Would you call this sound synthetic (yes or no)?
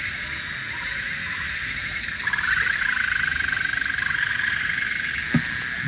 no